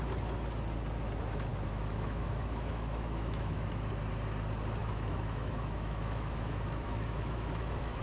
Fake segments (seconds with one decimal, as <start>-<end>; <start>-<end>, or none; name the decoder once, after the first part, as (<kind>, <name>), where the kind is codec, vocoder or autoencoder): 1.5-3.9 (autoencoder, DAC-VAE); 4.8-8.0